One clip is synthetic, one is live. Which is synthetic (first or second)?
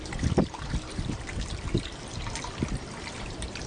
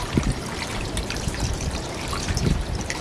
second